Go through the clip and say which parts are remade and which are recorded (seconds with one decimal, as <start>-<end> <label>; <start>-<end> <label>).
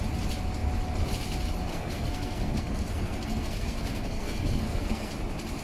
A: 0.0-1.7 recorded; 1.7-5.1 remade; 5.1-5.6 recorded